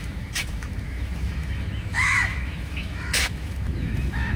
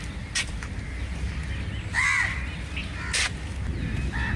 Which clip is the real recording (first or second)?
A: second